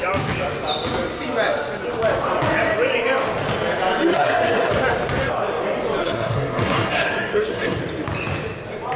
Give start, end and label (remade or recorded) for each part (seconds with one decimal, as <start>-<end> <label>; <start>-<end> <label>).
0.0-4.1 recorded; 4.1-4.7 remade; 4.7-6.0 recorded; 6.0-7.8 remade; 7.8-9.0 recorded